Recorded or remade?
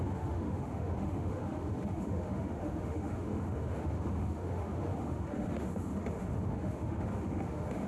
remade